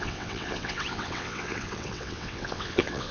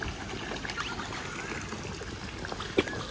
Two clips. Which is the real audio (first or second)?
second